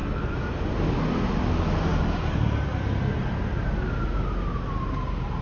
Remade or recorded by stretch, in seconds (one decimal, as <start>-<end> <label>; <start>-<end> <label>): 0.0-5.4 recorded